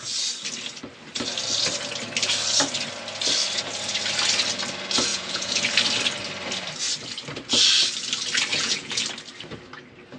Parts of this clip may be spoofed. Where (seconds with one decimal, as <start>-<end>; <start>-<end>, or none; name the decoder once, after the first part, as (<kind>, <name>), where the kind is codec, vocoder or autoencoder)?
5.1-5.6 (vocoder, Vocos); 8.5-9.0